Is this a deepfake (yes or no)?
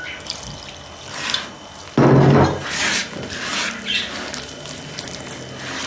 no